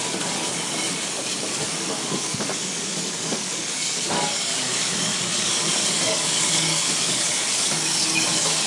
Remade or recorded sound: remade